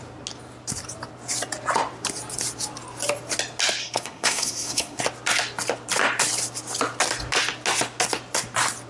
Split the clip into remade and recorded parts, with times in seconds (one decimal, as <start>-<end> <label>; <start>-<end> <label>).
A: 0.0-3.8 recorded; 3.8-5.0 remade; 5.0-8.9 recorded

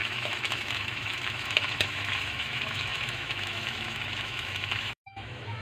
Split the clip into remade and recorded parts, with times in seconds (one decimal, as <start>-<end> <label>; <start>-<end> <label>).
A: 0.0-5.6 remade

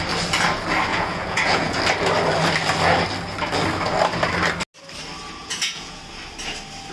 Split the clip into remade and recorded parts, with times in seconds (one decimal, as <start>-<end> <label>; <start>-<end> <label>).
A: 0.0-0.9 recorded; 0.9-1.8 remade; 1.8-5.4 recorded; 5.4-6.0 remade; 6.0-6.9 recorded

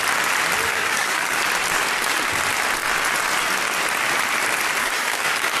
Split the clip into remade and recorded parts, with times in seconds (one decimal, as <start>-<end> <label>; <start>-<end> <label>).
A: 0.0-0.7 recorded; 0.7-1.4 remade; 1.4-4.8 recorded; 4.8-5.6 remade

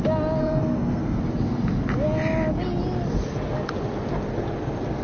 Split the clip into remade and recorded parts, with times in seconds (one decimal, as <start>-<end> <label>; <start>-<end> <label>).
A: 0.0-0.4 recorded; 0.4-1.2 remade; 1.2-5.0 recorded

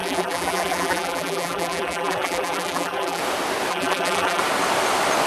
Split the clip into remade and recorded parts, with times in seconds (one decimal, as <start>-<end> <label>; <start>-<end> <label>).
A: 0.0-3.2 remade; 3.2-3.7 recorded; 3.7-4.4 remade; 4.4-5.3 recorded

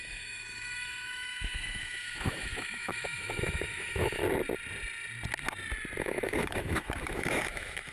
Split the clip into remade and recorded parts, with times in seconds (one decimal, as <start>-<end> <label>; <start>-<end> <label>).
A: 0.0-4.2 remade; 4.2-6.0 recorded; 6.0-7.9 remade